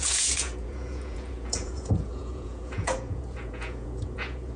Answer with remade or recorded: remade